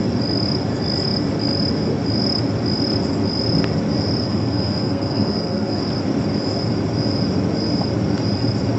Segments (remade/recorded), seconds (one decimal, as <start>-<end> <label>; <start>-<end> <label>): 0.0-4.2 recorded; 4.2-5.8 remade; 5.8-8.8 recorded